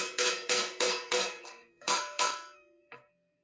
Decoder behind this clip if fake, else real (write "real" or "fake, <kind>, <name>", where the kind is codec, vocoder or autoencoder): fake, codec, SNAC